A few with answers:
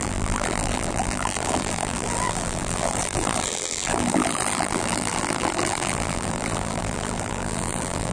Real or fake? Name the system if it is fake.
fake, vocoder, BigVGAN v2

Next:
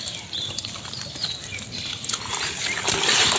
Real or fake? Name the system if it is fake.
real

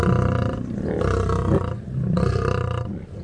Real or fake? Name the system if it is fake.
real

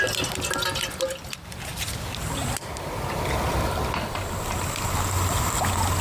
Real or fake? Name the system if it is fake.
real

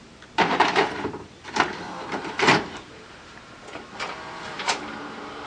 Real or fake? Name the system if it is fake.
fake, vocoder, BigVGAN v2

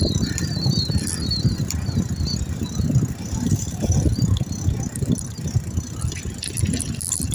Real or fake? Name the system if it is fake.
fake, vocoder, BigVGAN v2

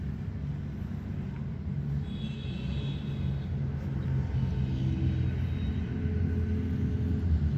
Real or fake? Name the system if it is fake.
real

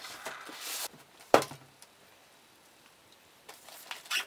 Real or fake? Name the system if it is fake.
fake, vocoder, BigVGAN v2